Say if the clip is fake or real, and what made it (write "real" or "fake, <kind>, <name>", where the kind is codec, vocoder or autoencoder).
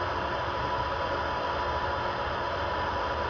real